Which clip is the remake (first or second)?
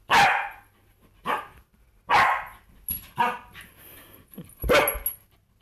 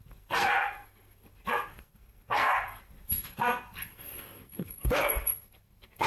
second